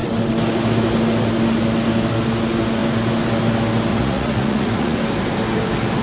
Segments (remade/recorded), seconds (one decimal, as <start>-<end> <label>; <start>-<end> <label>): 0.0-3.9 recorded; 3.9-5.0 remade; 5.0-6.0 recorded